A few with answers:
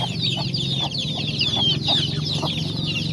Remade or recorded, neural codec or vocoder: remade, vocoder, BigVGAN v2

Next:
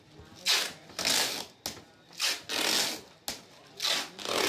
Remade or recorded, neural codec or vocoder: recorded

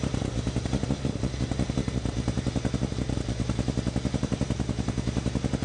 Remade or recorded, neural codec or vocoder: remade, vocoder, BigVGAN v2